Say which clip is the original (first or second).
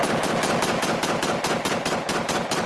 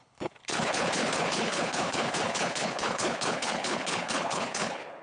first